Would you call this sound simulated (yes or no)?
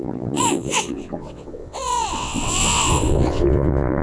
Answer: yes